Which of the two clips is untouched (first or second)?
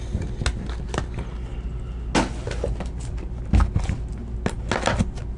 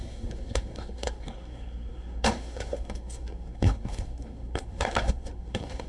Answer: first